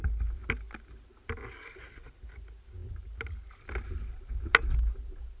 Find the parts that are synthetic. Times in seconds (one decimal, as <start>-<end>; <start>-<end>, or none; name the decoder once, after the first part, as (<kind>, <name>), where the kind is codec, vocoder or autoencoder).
none